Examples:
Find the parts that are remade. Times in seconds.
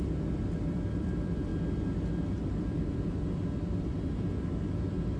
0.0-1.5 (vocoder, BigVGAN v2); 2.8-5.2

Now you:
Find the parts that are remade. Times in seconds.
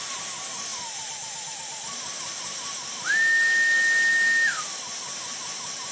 none